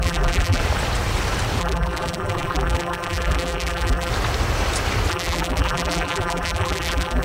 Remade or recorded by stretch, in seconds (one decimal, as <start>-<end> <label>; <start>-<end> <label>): 0.0-0.6 remade; 0.6-1.6 recorded; 1.6-4.1 remade; 4.1-5.1 recorded; 5.1-7.2 remade

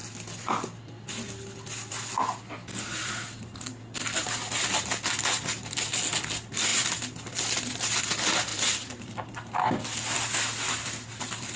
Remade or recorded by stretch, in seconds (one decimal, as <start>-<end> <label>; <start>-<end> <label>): 0.0-11.6 recorded

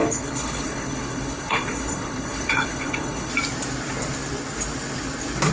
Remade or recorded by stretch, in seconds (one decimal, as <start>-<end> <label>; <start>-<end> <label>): 0.0-3.3 remade; 3.3-5.5 recorded

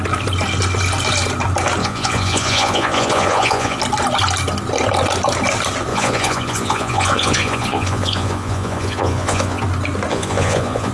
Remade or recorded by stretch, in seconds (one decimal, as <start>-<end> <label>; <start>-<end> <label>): 0.0-1.8 recorded; 1.8-3.8 remade; 3.8-5.9 recorded; 5.9-9.6 remade; 9.6-10.1 recorded; 10.1-10.9 remade

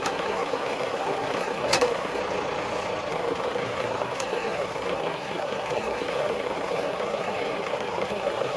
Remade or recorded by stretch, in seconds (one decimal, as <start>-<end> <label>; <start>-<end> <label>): 0.0-2.2 remade; 2.2-3.1 recorded; 3.1-8.6 remade

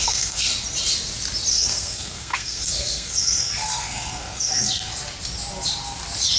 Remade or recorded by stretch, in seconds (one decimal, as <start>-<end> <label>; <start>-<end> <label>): 0.0-0.5 remade; 0.5-1.5 recorded; 1.5-4.9 remade; 4.9-6.4 recorded

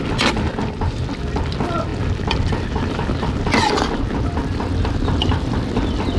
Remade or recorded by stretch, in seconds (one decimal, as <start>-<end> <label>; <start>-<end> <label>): 0.0-6.2 recorded